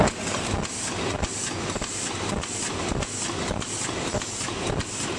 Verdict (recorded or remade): recorded